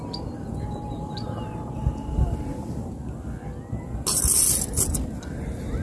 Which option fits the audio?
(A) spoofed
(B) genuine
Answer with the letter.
B